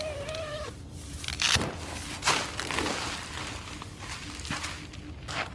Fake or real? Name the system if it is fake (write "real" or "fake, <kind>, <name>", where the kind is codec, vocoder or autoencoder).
real